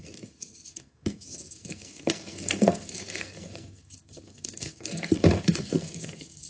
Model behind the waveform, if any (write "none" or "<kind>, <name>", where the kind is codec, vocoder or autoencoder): codec, SNAC